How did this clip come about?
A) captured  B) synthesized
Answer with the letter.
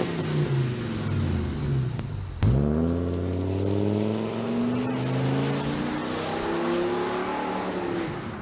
A